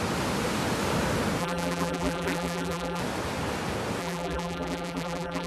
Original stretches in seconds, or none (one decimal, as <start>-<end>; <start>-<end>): 0.0-1.4; 3.0-4.0